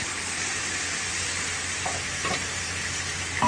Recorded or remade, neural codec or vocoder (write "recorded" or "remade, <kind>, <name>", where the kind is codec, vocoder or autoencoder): recorded